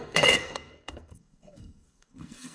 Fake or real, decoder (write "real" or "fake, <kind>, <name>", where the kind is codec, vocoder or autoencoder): fake, codec, SNAC